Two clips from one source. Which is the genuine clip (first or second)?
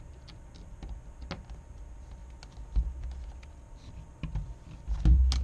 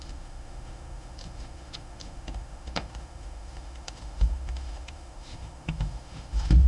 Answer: first